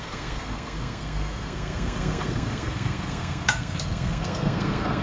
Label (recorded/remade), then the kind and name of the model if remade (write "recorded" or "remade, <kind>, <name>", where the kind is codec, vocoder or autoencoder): remade, codec, SNAC